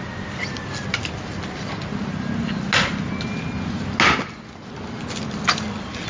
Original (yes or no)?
yes